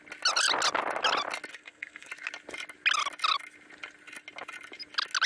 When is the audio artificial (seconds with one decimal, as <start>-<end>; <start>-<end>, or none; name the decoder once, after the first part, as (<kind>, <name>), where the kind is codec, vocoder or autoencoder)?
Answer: 1.5-2.1 (codec, SNAC)